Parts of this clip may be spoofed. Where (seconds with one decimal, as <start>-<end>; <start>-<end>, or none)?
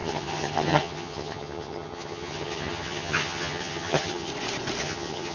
0.0-4.3; 4.8-5.3